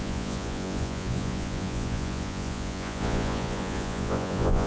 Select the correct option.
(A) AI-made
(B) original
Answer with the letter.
A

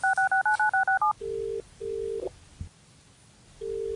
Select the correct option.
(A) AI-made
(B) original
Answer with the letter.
B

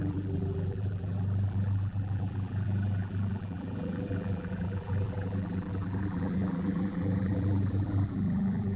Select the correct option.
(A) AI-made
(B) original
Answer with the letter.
A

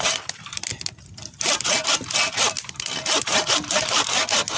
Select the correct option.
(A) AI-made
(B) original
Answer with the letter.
B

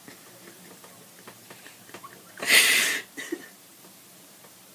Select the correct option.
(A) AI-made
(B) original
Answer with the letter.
A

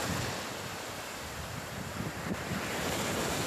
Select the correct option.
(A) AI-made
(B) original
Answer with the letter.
B